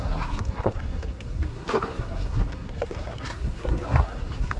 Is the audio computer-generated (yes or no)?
yes